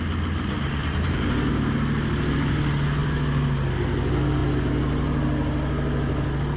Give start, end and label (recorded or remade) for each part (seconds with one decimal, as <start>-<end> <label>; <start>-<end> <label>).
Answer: 0.0-6.6 recorded